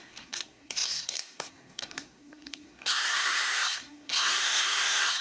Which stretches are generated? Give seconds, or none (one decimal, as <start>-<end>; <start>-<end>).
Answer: 0.0-5.2

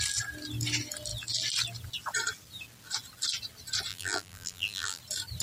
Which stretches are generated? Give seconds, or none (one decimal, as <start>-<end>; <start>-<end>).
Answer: 3.9-5.0